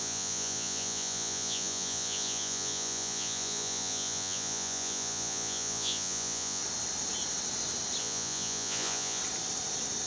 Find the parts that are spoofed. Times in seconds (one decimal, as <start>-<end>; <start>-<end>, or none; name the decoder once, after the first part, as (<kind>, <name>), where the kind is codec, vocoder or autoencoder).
0.0-6.6 (vocoder, Vocos); 8.0-9.2